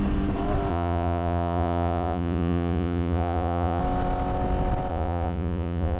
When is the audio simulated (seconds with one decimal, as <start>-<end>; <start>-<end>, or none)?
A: 0.7-3.8; 4.9-6.0